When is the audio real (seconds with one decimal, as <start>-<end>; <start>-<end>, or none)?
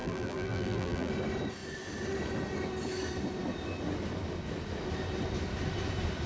1.1-6.3